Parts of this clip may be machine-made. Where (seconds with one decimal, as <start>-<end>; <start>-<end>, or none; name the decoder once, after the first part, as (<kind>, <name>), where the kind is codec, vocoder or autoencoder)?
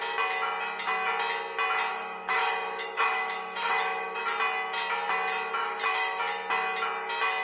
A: 1.9-4.2 (autoencoder, DAC-VAE); 5.6-6.2